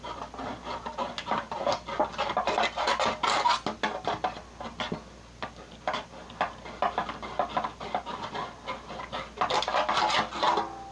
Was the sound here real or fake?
real